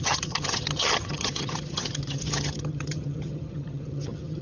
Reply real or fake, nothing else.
fake